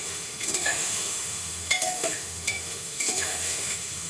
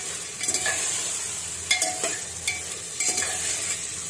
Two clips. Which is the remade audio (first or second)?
first